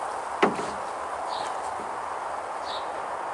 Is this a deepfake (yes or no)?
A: no